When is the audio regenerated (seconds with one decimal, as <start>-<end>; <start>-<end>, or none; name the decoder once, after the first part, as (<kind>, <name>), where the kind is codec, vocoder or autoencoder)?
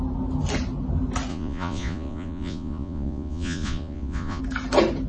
1.3-4.4 (vocoder, Vocos)